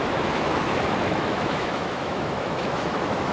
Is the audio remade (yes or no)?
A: yes